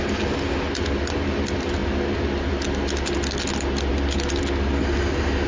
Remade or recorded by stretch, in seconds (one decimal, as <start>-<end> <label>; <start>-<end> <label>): 0.0-5.5 recorded